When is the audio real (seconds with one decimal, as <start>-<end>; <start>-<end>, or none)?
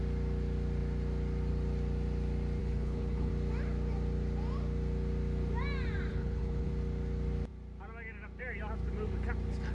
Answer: 0.0-2.6; 3.3-6.1; 6.7-9.7